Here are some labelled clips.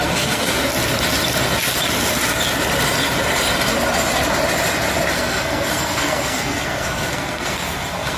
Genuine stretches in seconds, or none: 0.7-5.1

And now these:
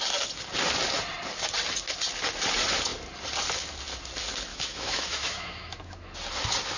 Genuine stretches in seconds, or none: 0.0-4.5; 6.1-6.8

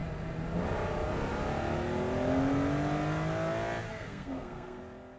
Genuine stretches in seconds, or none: 0.0-3.9; 4.8-5.2

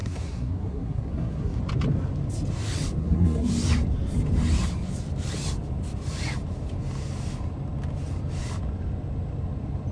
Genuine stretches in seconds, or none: 1.6-3.0; 3.5-9.9

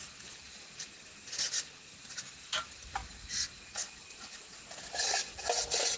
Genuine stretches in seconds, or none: 0.0-6.0

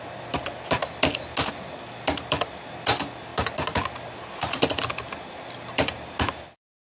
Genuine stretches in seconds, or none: 0.0-6.9

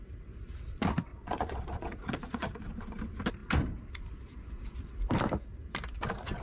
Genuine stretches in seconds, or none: 0.0-1.1; 2.6-6.4